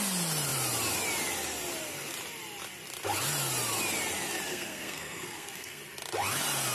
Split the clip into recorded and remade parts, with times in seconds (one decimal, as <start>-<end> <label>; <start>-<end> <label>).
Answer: 0.0-4.5 recorded; 4.5-5.8 remade; 5.8-6.7 recorded